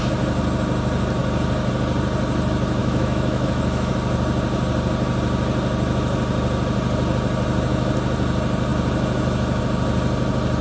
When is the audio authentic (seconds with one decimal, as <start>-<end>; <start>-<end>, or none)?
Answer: 0.0-2.8; 3.9-10.6